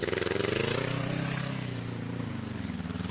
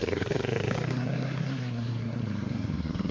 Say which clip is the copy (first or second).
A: second